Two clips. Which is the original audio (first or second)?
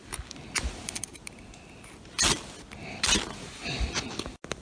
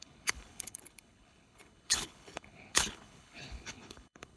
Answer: first